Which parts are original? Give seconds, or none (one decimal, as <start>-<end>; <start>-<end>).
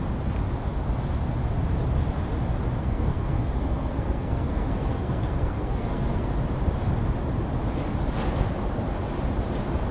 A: 0.0-2.8; 6.3-9.9